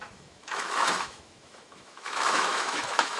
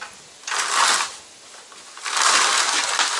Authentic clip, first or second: second